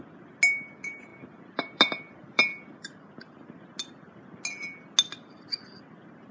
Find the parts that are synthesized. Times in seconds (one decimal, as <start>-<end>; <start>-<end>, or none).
1.1-3.0